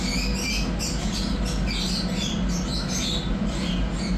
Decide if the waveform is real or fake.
real